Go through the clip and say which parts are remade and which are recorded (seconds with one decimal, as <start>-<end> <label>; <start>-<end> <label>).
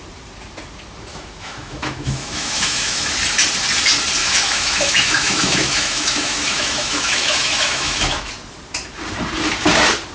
0.0-1.1 recorded; 1.1-3.0 remade; 3.0-4.2 recorded; 4.2-8.3 remade; 8.3-10.1 recorded